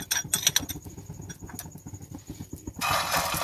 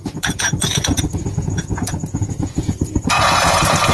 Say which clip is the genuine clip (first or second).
first